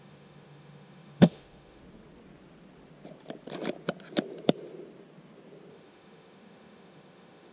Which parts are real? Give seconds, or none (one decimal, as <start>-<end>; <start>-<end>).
1.8-5.7